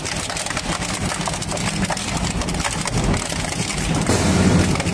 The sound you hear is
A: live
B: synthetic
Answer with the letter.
A